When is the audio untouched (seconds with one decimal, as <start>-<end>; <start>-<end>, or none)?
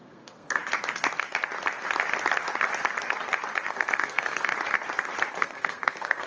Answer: 0.6-3.7; 4.5-5.3